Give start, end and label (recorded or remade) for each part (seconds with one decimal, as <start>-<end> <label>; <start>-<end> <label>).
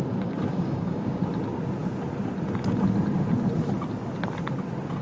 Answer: 0.0-0.5 recorded; 0.5-1.2 remade; 1.2-5.0 recorded